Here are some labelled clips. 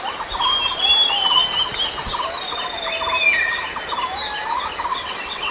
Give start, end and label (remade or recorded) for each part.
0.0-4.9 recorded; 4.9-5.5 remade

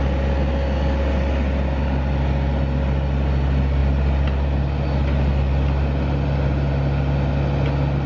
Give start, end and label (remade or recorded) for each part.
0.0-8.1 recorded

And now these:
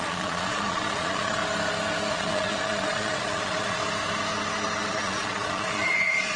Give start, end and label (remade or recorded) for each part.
0.0-1.4 remade; 1.4-2.1 recorded; 2.1-3.8 remade; 3.8-4.9 recorded; 4.9-6.4 remade

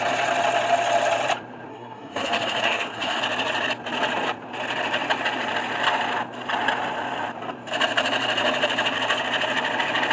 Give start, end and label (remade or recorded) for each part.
0.0-1.7 recorded; 1.7-3.2 remade; 3.2-10.1 recorded

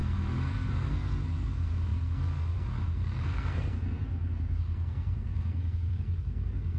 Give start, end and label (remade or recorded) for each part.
0.0-6.8 remade

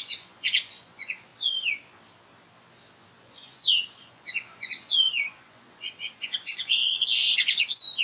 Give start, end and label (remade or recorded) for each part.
0.0-1.3 remade; 1.3-3.2 recorded; 3.2-8.0 remade